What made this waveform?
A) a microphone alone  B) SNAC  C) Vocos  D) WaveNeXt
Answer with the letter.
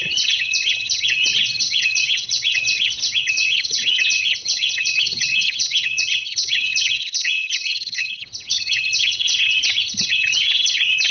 D